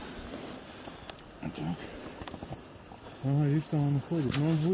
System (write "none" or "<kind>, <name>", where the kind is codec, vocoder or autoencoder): none